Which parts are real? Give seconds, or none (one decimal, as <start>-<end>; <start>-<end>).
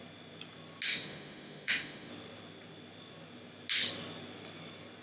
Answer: 0.0-0.9; 2.1-5.0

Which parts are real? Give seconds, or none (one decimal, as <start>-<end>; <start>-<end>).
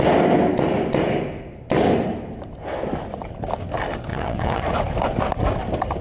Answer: 0.0-4.1; 4.6-6.0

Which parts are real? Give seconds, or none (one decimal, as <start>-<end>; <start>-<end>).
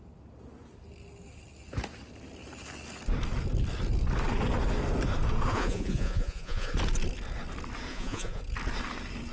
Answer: 0.0-5.5; 6.7-7.9; 8.4-9.3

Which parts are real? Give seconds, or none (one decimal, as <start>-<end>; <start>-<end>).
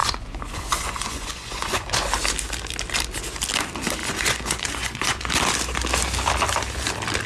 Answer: 2.1-4.0; 5.3-7.3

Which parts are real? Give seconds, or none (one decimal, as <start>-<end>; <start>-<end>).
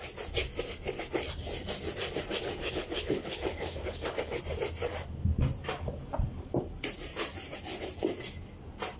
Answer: 0.0-2.6; 4.4-9.0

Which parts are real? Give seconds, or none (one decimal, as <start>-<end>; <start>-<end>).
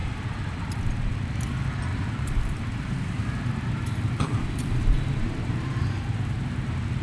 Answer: 0.0-1.9; 6.0-7.0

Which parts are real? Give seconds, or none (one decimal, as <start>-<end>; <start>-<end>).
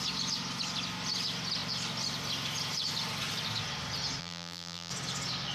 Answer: 0.0-4.2; 4.9-5.5